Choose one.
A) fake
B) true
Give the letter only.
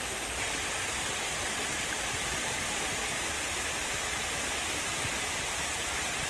B